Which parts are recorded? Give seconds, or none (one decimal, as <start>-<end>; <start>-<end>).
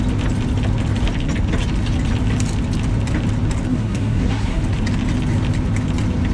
0.0-3.7; 4.6-6.3